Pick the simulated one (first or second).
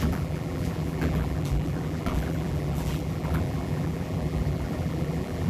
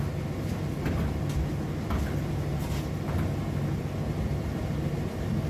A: first